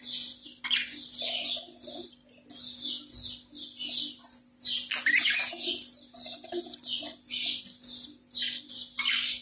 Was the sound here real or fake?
real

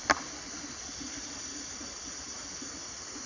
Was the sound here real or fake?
real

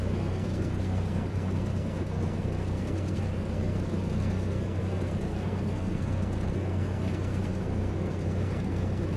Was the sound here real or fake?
fake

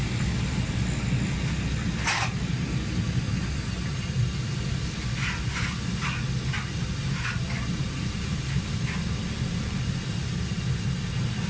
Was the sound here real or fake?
real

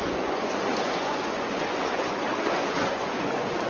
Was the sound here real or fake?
fake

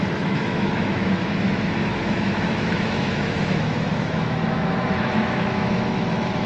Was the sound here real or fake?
fake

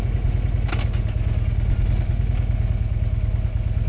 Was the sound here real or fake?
real